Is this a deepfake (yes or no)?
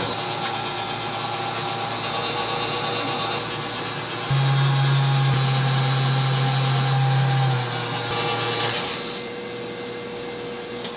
no